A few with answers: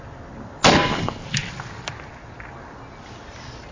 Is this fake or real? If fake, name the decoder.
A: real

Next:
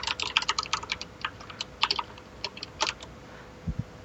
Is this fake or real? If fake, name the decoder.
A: real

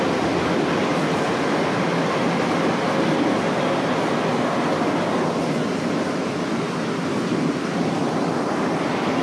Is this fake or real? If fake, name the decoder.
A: real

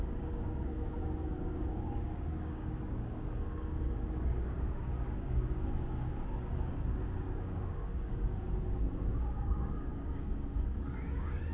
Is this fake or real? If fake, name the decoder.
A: fake, codec, DAC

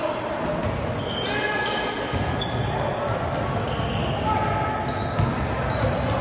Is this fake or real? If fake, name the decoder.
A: real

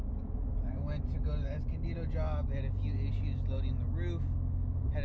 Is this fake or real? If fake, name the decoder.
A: real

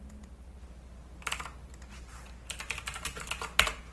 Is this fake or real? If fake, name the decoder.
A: real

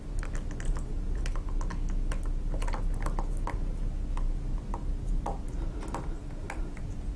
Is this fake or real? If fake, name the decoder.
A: real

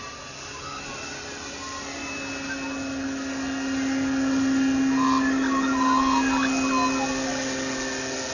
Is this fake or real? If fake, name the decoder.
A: real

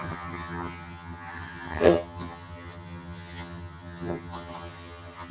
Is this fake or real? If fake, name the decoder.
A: fake, vocoder, HiFi-GAN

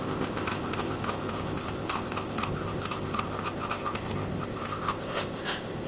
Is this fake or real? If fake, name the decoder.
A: fake, codec, ZipCodec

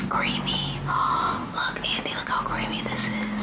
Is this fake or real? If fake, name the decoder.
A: real